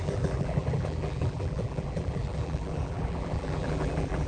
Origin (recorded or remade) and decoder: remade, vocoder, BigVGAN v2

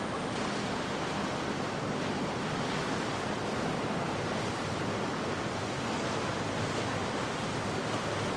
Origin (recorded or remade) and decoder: remade, vocoder, BigVGAN v2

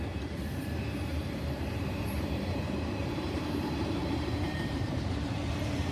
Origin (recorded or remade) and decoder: remade, vocoder, BigVGAN v2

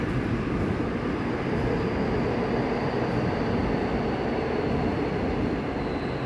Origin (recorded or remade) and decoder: recorded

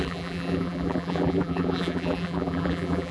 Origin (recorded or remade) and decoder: remade, vocoder, BigVGAN v2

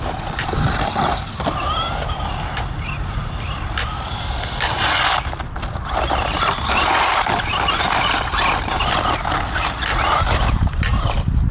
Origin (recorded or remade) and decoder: recorded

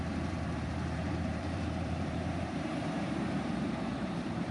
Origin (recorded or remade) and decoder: remade, vocoder, BigVGAN v2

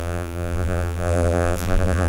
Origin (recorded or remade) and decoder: remade, vocoder, BigVGAN v2